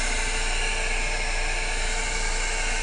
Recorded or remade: recorded